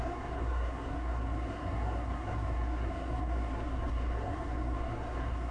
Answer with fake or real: fake